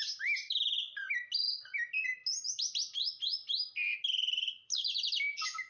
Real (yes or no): yes